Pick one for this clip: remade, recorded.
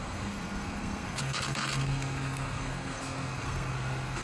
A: remade